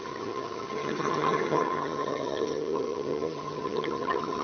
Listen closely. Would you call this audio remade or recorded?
remade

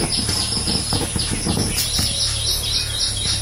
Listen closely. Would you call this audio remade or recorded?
recorded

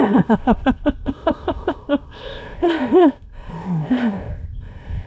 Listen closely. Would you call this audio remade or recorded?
remade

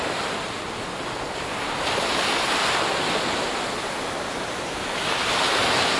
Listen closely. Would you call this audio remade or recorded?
recorded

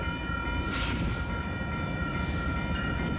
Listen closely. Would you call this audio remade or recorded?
remade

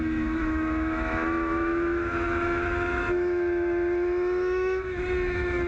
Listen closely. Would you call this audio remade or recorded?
remade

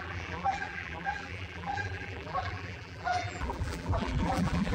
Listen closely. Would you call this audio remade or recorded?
remade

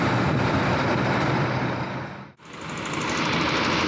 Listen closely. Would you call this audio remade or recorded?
recorded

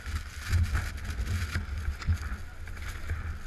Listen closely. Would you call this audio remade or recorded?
recorded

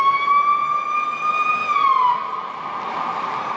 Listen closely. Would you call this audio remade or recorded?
recorded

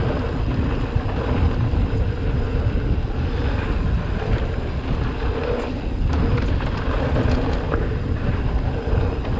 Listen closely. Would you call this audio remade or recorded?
recorded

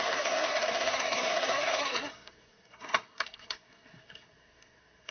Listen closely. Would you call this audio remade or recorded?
remade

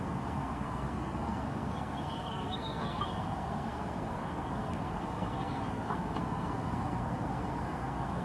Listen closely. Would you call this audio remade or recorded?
remade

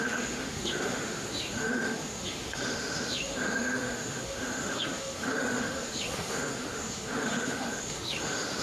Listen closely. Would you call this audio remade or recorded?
remade